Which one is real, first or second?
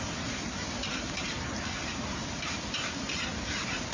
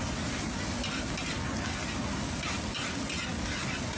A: second